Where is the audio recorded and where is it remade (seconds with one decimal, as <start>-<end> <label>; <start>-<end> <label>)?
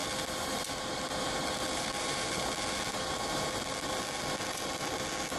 0.0-3.2 remade; 3.2-5.4 recorded